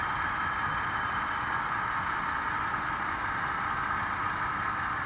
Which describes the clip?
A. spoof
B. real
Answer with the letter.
B